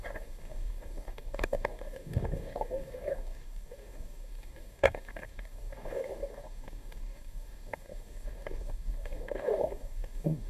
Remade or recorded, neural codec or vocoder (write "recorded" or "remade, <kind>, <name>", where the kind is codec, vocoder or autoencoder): remade, codec, DAC